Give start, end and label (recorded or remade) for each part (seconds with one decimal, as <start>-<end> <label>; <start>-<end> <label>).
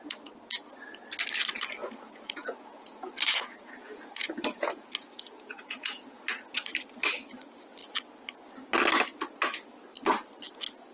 0.0-1.8 recorded; 1.8-6.7 remade; 6.7-10.9 recorded